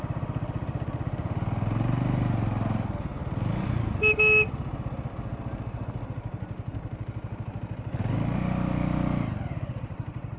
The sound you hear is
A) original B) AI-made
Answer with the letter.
A